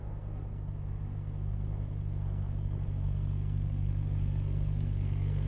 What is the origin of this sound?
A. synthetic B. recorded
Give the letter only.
A